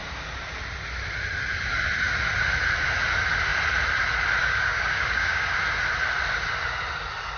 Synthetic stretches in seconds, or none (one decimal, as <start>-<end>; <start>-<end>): 4.4-5.6